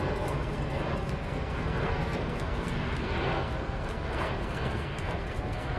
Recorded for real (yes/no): no